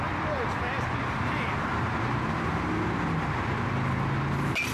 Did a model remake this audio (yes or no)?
no